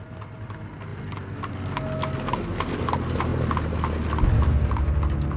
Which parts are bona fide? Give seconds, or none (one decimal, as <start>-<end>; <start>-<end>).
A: 0.0-5.4